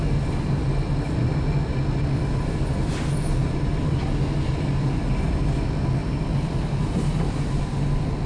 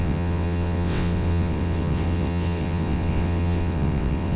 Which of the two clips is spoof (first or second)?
second